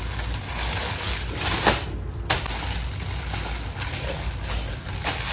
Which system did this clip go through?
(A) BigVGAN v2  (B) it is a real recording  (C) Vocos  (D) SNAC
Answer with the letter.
B